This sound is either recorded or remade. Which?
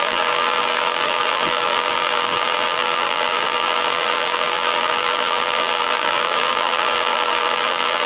remade